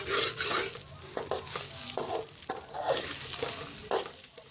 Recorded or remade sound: recorded